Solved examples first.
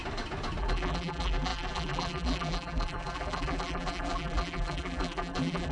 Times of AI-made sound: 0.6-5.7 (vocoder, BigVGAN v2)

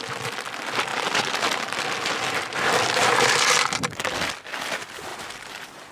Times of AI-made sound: 0.9-4.4 (vocoder, BigVGAN v2); 5.1-5.9

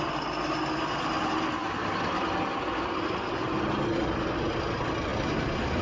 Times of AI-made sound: 1.6-3.6 (vocoder, BigVGAN v2); 5.1-5.8

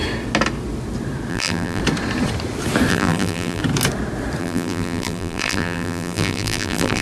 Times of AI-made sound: 1.3-1.8 (vocoder, BigVGAN v2); 2.9-3.6; 4.4-7.0

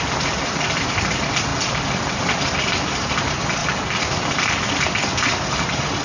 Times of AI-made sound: none